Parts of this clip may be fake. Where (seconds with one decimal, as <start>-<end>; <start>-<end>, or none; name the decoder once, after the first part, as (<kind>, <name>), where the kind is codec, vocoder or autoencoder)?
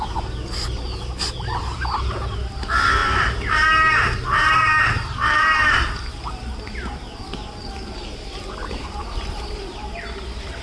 3.0-6.1 (vocoder, BigVGAN v2); 9.0-10.0